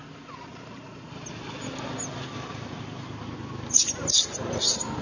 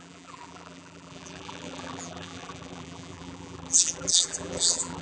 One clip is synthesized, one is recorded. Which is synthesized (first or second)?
second